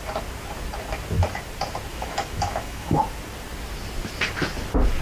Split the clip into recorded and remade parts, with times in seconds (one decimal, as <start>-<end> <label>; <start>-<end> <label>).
0.0-1.9 recorded; 1.9-3.0 remade; 3.0-5.0 recorded